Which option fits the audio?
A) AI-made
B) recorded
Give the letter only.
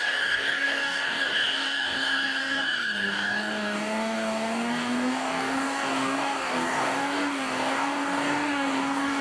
A